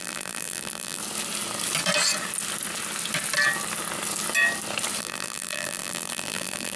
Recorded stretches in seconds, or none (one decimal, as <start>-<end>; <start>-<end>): 1.0-5.0